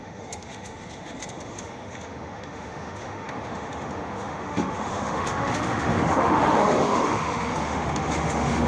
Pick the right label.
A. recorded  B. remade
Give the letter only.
B